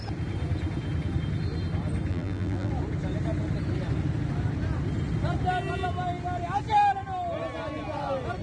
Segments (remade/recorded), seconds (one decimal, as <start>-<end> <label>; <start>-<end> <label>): 0.0-2.1 recorded; 2.1-2.7 remade; 2.7-8.4 recorded